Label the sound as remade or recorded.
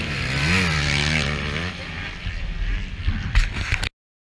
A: recorded